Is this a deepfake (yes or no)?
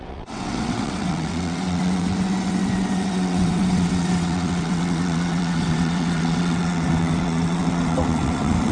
yes